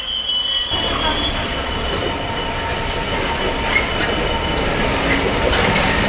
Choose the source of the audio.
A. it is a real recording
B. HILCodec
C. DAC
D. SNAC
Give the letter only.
A